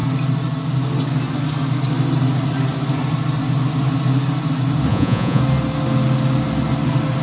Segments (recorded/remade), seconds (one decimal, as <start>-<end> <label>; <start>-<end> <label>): 0.0-4.9 recorded; 4.9-5.4 remade; 5.4-7.2 recorded